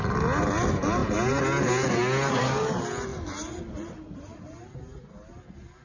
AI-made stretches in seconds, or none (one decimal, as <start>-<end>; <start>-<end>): 3.1-4.7